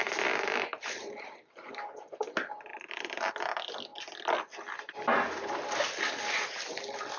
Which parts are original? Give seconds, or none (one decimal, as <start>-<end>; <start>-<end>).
1.7-2.7; 3.3-7.2